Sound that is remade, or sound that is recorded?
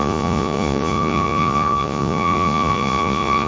remade